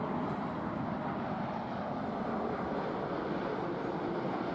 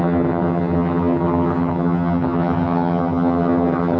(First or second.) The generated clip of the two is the second